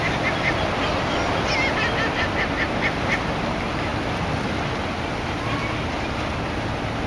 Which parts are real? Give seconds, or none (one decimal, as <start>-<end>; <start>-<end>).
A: 0.0-7.1